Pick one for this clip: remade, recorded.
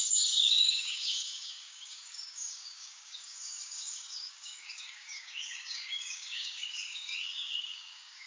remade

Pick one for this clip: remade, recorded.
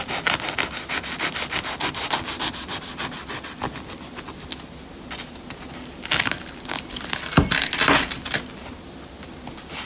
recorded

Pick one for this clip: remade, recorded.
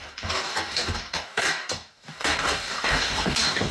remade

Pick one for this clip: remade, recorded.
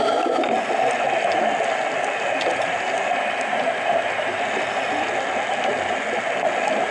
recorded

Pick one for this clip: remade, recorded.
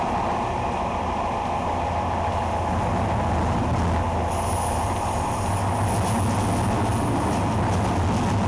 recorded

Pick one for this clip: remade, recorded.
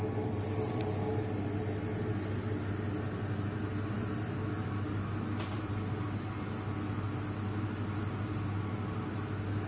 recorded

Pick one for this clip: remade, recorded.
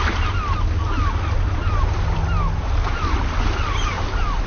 recorded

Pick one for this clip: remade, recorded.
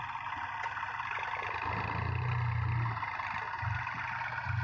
recorded